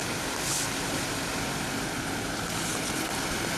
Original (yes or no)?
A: yes